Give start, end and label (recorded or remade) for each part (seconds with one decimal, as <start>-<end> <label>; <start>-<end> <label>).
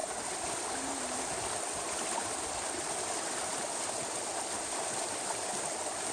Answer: 0.0-6.1 recorded